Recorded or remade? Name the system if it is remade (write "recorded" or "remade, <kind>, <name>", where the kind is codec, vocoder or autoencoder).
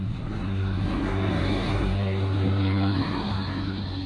remade, codec, SNAC